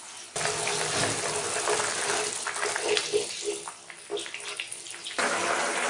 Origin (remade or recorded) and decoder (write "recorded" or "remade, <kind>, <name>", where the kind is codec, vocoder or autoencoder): recorded